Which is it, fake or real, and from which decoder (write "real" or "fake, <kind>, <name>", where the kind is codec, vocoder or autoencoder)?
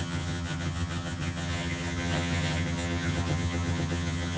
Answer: fake, vocoder, HiFi-GAN